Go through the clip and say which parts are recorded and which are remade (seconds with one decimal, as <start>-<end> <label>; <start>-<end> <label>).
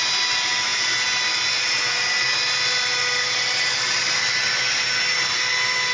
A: 0.0-5.9 recorded